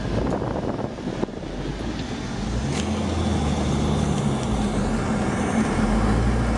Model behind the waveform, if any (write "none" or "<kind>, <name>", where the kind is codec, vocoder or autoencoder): none